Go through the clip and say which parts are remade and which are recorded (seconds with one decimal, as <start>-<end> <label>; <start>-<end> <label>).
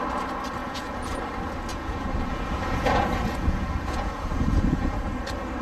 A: 0.0-0.6 recorded; 0.6-1.2 remade; 1.2-1.7 recorded; 1.7-5.1 remade; 5.1-5.6 recorded